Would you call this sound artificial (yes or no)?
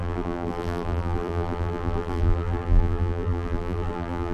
yes